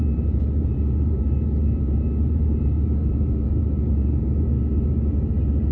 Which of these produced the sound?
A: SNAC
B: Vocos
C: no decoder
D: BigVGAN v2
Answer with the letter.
D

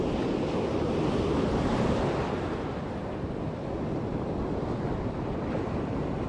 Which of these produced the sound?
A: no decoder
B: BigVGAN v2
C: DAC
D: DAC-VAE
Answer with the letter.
A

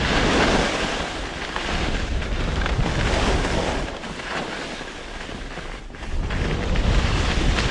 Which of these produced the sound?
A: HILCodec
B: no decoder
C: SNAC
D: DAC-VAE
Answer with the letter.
B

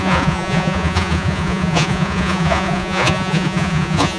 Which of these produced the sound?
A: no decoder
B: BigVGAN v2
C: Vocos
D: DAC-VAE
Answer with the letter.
C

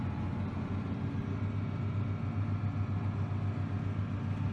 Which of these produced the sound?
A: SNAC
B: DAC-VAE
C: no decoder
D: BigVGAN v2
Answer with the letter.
C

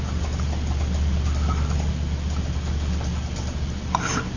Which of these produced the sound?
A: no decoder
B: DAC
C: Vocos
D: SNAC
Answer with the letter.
A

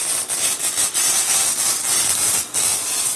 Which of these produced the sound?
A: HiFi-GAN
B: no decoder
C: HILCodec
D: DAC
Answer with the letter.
B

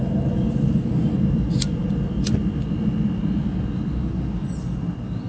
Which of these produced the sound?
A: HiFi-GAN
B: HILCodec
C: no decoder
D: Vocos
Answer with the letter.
C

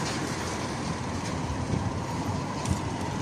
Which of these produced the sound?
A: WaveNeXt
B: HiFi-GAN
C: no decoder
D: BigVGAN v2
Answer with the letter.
D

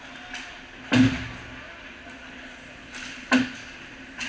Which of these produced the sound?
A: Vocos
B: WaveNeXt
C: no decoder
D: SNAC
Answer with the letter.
C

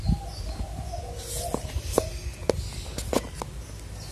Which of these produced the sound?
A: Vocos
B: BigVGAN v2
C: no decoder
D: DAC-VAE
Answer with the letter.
C